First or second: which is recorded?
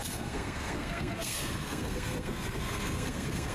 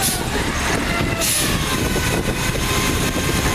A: second